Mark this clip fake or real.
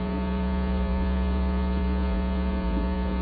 fake